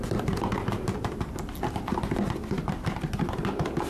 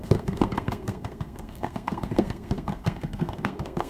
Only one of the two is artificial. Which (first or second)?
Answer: second